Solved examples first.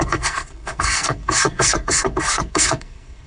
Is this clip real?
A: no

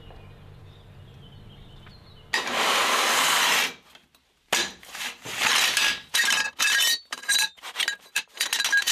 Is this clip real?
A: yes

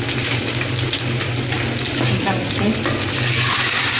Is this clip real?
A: yes